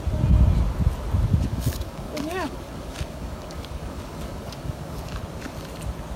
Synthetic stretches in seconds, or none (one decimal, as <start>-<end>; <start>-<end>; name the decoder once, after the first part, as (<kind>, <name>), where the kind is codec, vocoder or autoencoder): 1.5-5.2 (codec, DAC)